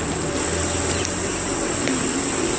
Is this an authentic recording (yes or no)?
yes